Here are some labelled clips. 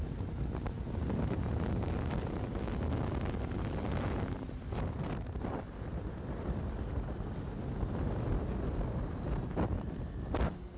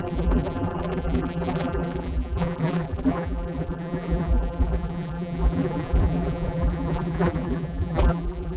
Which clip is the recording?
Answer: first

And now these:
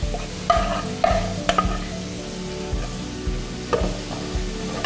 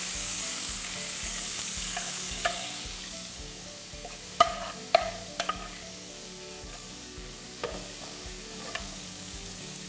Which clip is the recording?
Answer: first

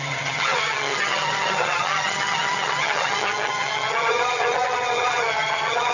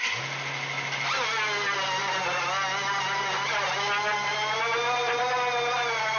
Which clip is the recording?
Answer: second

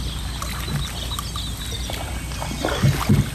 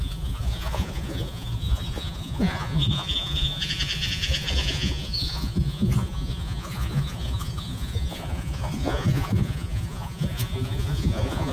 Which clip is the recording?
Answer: first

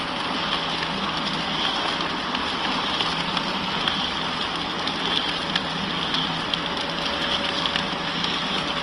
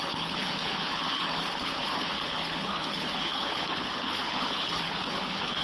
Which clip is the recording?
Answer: first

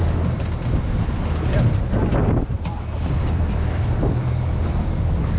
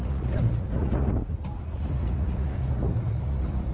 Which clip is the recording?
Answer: first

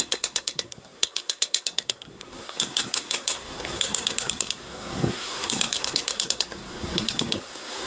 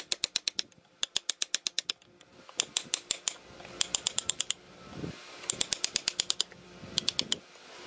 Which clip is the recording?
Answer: second